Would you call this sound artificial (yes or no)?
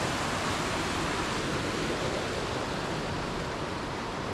no